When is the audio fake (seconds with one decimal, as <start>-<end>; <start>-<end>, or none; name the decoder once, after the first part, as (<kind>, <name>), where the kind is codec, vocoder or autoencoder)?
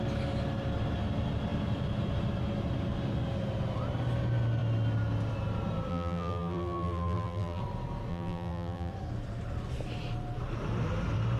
5.9-7.6 (vocoder, BigVGAN v2); 8.1-8.9